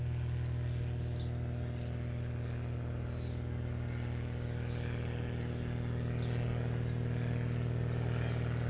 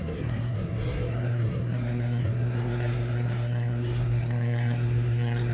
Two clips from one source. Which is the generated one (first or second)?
second